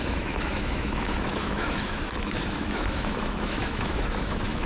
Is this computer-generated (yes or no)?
yes